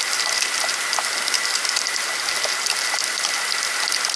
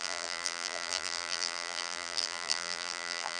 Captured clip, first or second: first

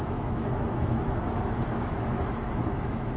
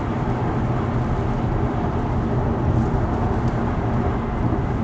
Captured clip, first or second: second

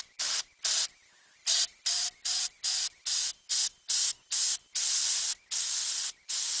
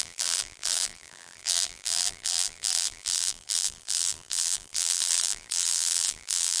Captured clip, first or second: first